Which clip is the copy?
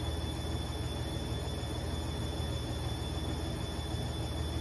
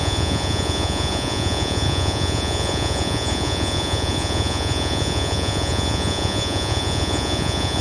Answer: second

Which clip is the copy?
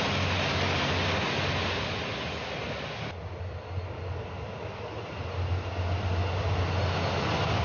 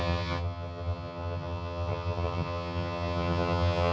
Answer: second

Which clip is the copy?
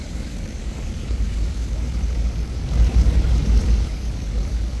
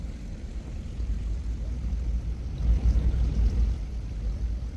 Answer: first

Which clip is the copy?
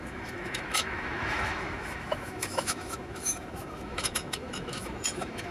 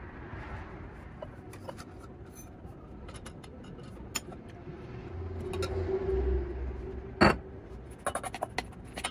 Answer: first